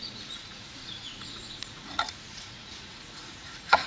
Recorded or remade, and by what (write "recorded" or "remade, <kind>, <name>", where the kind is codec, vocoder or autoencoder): remade, vocoder, Vocos